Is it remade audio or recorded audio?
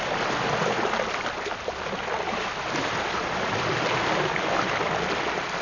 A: recorded